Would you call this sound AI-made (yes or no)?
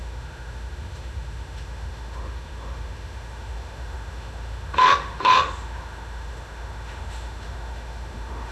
yes